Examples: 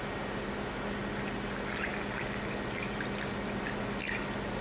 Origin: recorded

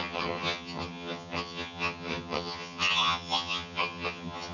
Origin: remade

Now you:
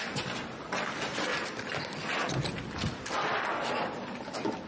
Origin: recorded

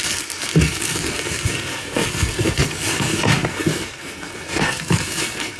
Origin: remade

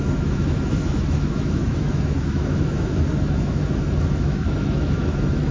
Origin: remade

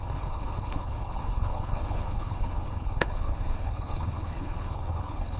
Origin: remade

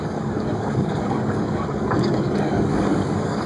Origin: remade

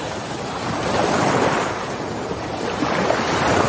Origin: remade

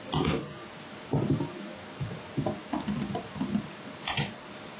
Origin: remade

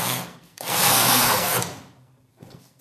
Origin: remade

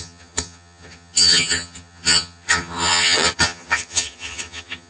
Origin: remade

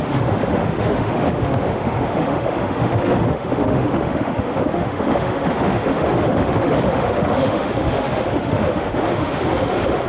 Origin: remade